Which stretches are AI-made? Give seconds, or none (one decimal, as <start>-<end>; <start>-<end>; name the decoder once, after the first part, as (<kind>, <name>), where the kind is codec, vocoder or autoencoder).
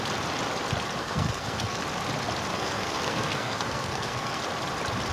1.0-1.8 (codec, SNAC); 2.5-4.4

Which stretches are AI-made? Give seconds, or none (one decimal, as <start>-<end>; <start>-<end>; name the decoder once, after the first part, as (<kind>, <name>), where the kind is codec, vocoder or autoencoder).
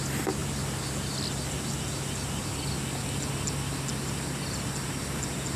none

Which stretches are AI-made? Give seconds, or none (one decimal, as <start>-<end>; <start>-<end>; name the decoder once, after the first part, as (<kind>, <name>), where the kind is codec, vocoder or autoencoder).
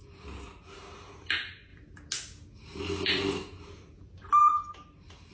none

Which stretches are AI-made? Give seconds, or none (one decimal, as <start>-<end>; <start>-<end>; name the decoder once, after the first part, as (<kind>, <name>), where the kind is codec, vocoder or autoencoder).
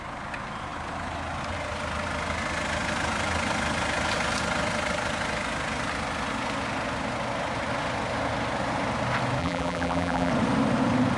9.4-10.3 (vocoder, BigVGAN v2)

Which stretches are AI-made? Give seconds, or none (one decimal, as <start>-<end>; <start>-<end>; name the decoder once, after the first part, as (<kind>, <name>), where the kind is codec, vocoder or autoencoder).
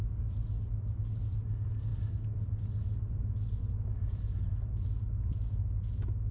none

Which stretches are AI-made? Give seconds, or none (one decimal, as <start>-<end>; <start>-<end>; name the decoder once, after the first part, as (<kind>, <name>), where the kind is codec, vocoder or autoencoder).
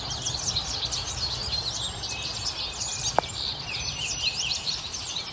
2.4-5.3 (vocoder, BigVGAN v2)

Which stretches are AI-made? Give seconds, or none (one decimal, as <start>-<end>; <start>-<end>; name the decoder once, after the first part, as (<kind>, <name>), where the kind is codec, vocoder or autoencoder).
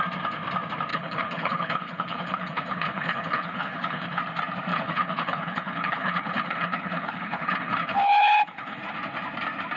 0.9-4.2 (codec, HILCodec); 4.7-8.8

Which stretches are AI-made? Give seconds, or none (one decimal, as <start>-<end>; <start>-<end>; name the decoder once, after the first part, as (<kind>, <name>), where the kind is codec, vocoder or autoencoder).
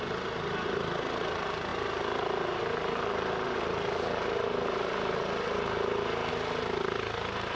none